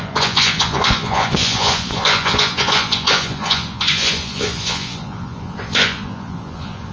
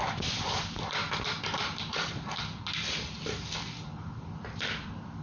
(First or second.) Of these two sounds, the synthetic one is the first